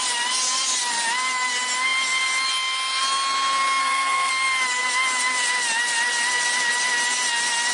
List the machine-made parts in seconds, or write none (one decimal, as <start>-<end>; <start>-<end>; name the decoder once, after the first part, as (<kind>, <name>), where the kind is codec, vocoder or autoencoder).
3.8-4.3 (codec, SNAC)